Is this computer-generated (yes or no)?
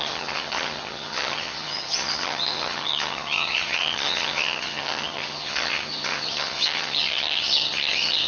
yes